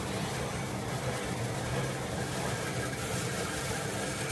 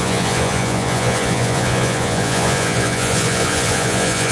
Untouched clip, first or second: first